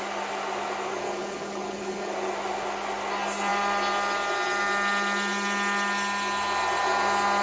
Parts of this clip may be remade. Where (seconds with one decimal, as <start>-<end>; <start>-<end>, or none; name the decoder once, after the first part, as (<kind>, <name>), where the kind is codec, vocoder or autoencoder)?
1.0-2.1 (codec, HILCodec)

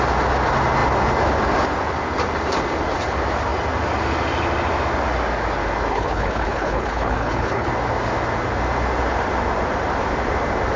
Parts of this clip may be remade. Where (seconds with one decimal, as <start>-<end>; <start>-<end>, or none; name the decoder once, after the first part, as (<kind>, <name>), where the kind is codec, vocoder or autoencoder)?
5.9-7.7 (codec, HILCodec)

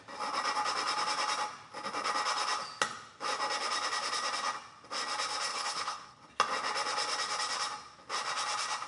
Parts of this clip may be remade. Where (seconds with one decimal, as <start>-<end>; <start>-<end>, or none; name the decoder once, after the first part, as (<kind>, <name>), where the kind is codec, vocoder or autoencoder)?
5.5-6.3 (codec, HILCodec)

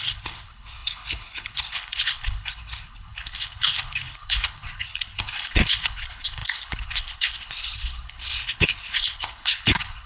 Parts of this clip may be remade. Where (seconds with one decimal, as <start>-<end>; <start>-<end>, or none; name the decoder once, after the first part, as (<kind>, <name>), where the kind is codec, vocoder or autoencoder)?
0.0-10.1 (codec, HILCodec)

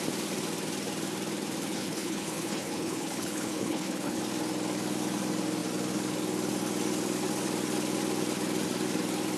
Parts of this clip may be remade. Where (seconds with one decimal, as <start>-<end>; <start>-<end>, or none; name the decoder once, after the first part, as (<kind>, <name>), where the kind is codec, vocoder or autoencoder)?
1.7-4.2 (codec, HILCodec)

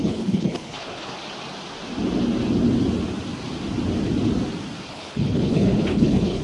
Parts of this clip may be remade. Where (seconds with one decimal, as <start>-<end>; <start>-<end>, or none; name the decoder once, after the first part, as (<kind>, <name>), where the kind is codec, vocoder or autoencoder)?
0.0-1.1 (codec, HILCodec); 4.9-6.4

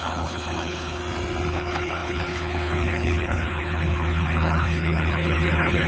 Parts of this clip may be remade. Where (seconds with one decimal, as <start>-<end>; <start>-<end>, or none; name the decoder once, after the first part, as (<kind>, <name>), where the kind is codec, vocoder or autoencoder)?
0.0-1.0 (codec, HILCodec); 1.5-5.9